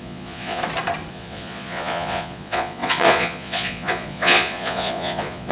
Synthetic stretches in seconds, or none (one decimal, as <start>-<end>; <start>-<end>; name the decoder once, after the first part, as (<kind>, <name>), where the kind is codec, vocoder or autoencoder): 0.0-0.6 (vocoder, Vocos); 1.1-5.5